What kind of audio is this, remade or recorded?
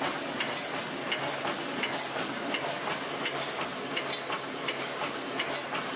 recorded